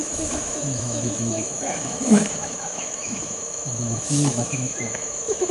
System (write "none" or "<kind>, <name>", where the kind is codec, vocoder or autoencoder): autoencoder, DAC-VAE